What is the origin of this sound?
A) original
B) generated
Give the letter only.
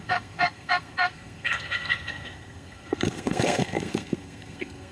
B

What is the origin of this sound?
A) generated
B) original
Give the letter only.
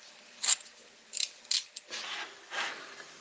B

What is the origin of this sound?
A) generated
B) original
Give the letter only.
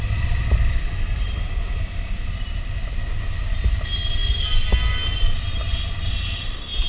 B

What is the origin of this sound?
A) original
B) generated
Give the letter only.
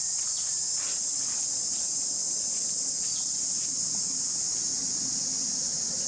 A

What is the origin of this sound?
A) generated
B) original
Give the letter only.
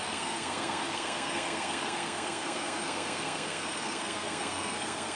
A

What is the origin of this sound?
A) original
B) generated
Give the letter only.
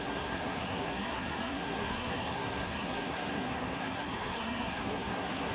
B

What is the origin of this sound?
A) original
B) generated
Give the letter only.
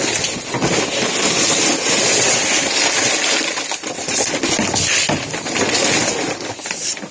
A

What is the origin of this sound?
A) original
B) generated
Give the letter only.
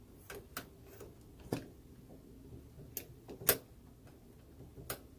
A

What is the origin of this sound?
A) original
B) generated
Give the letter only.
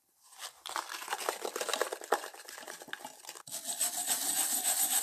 A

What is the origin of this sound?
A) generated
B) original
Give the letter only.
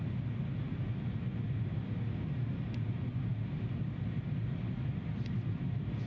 B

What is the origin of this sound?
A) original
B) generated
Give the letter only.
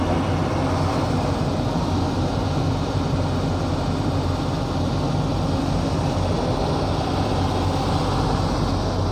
A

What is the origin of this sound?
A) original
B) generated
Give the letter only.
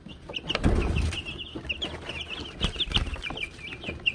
A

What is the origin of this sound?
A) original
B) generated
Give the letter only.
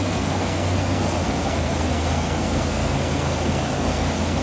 B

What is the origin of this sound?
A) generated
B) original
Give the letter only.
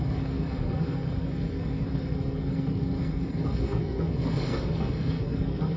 A